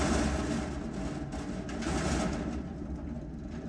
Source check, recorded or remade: recorded